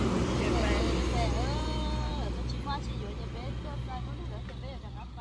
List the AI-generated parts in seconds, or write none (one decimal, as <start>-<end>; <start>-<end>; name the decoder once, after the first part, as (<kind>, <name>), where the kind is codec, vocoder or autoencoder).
none